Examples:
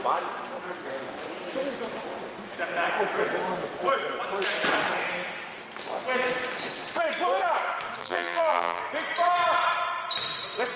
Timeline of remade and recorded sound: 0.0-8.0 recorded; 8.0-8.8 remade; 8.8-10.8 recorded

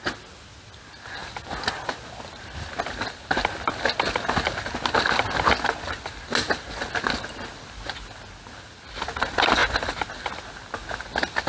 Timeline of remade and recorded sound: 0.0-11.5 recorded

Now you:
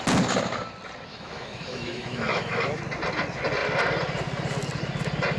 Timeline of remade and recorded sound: 0.0-1.1 recorded; 1.1-2.8 remade; 2.8-5.4 recorded

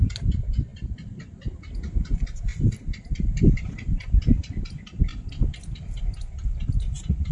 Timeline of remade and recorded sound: 0.0-0.7 recorded; 0.7-1.7 remade; 1.7-5.1 recorded; 5.1-6.0 remade; 6.0-7.3 recorded

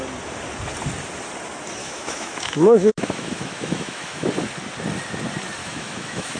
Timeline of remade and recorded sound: 0.0-1.8 recorded; 1.8-4.3 remade; 4.3-5.6 recorded; 5.6-6.4 remade

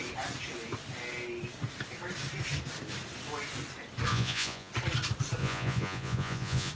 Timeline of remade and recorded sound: 0.0-4.1 recorded; 4.1-4.7 remade; 4.7-5.4 recorded; 5.4-6.7 remade